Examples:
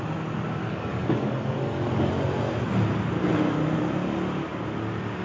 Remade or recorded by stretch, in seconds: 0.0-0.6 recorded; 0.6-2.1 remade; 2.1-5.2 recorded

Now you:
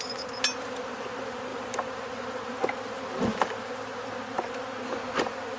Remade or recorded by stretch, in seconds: 0.0-1.5 recorded; 1.5-2.5 remade; 2.5-3.3 recorded; 3.3-4.1 remade; 4.1-5.6 recorded

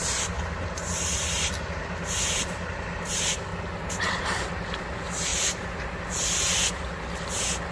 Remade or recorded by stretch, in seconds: 0.0-3.5 remade; 3.5-4.2 recorded; 4.2-6.6 remade; 6.6-7.2 recorded; 7.2-7.7 remade

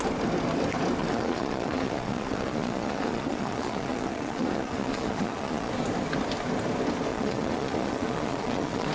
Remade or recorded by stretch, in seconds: 0.0-1.0 recorded; 1.0-5.7 remade; 5.7-7.1 recorded; 7.1-8.9 remade

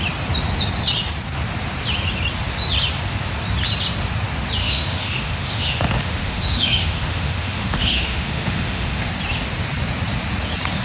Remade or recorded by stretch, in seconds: 0.0-4.6 recorded; 4.6-9.1 remade; 9.1-10.8 recorded

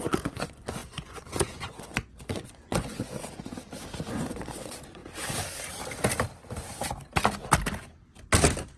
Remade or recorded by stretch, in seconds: 0.0-3.5 remade; 3.5-4.1 recorded; 4.1-5.0 remade; 5.0-8.8 recorded